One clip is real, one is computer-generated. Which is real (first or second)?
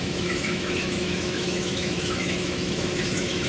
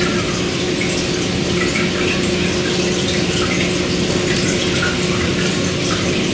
second